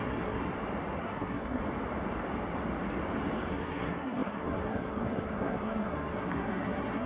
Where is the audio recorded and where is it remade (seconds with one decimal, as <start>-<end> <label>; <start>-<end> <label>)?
0.0-0.4 remade; 0.4-1.0 recorded; 1.0-1.6 remade; 1.6-3.5 recorded; 3.5-7.1 remade